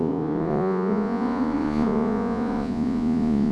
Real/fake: fake